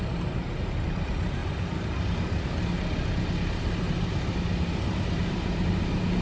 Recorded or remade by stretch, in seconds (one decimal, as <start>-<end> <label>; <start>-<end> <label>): 0.0-1.4 remade; 1.4-5.1 recorded; 5.1-6.2 remade